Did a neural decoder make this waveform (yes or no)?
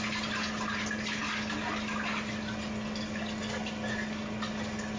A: no